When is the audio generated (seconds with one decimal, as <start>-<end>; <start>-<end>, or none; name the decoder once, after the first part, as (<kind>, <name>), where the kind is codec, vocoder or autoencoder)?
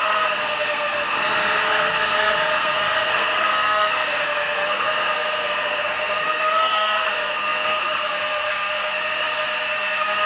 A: 0.0-10.3 (codec, SNAC)